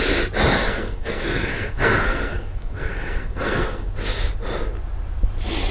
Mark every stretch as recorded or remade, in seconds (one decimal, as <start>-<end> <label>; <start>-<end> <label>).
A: 0.0-0.5 recorded; 0.5-3.9 remade; 3.9-5.7 recorded